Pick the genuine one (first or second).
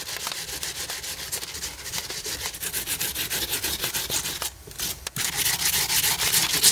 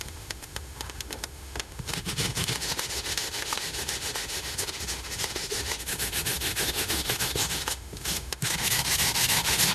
first